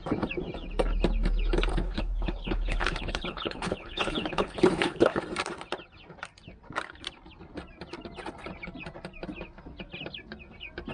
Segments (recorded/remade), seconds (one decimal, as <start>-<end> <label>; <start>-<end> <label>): 0.0-1.7 recorded; 1.7-5.2 remade; 5.2-10.9 recorded